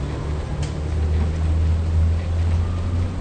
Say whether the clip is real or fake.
real